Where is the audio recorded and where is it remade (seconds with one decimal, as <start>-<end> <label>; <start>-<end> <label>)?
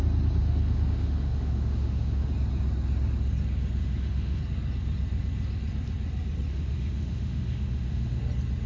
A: 0.0-0.4 recorded; 0.4-2.3 remade; 2.3-3.8 recorded; 3.8-4.4 remade; 4.4-6.5 recorded; 6.5-8.2 remade; 8.2-8.7 recorded